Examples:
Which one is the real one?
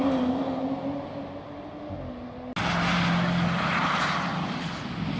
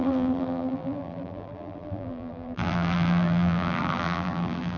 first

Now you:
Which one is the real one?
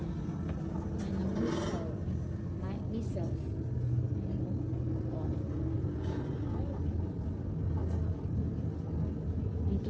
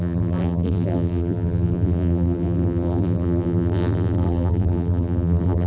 first